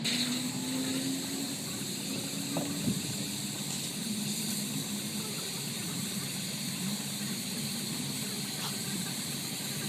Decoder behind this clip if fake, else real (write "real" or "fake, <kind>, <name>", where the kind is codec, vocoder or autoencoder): real